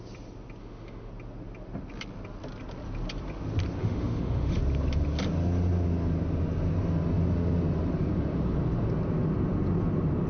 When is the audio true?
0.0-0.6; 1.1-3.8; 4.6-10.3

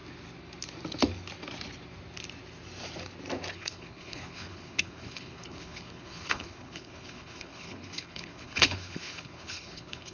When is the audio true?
0.0-3.5

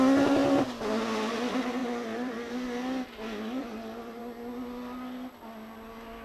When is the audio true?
0.0-1.8; 2.5-3.6; 4.2-6.2

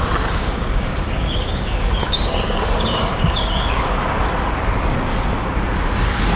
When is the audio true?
0.0-0.4; 4.1-6.4

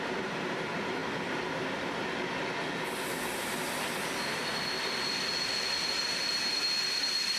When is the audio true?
1.0-4.0; 4.4-5.9